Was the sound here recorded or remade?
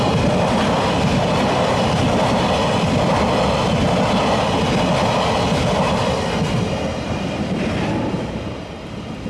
recorded